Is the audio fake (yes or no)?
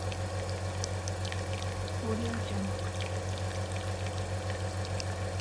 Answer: no